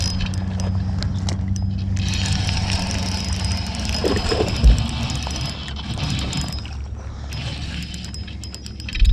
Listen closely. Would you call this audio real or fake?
real